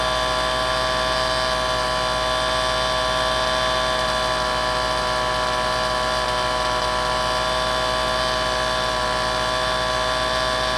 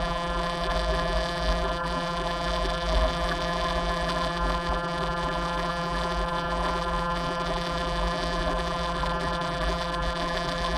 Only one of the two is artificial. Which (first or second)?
second